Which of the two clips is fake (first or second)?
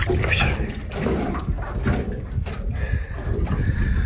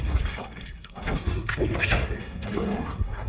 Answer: second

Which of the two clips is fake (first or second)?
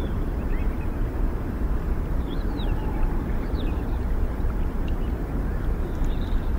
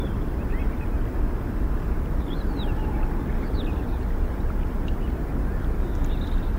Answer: first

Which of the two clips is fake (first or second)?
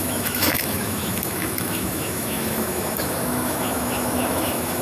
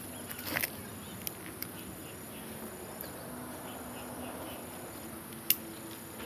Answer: first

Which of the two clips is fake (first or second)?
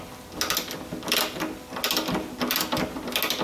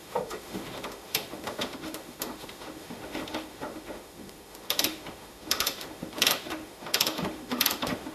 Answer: second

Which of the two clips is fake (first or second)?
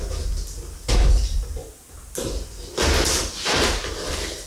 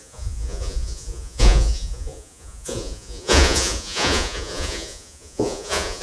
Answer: second